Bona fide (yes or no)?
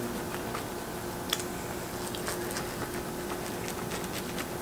yes